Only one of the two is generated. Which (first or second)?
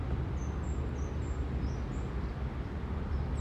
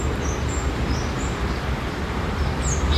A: second